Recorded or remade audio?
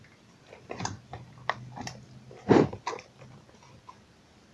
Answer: recorded